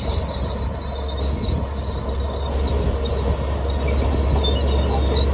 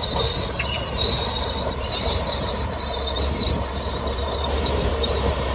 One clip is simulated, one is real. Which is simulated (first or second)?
second